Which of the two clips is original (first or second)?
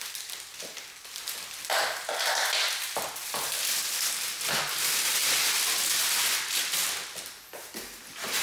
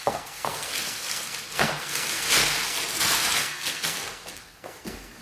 first